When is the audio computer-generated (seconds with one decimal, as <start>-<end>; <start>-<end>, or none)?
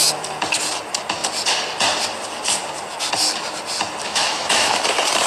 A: 4.0-4.8